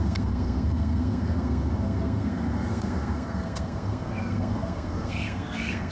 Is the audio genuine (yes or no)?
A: no